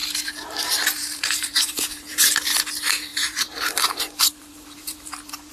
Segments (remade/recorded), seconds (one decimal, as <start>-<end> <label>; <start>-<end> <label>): 0.0-0.6 remade; 0.6-1.0 recorded; 1.0-2.1 remade; 2.1-3.1 recorded; 3.1-5.5 remade